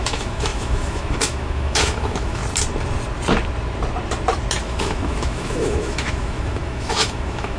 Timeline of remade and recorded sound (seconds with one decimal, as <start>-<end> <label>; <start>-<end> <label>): 0.0-2.4 remade; 2.4-4.6 recorded; 4.6-7.6 remade